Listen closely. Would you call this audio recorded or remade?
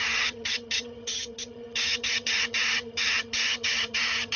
remade